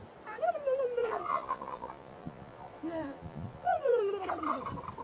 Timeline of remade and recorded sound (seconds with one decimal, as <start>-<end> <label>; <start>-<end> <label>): 0.0-1.0 recorded; 1.0-4.0 remade; 4.0-5.0 recorded

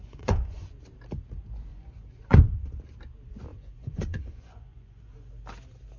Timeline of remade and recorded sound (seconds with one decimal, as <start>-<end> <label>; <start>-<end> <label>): 0.0-0.7 remade; 0.7-1.7 recorded; 1.7-2.6 remade; 2.6-3.5 recorded; 3.5-5.3 remade; 5.3-6.0 recorded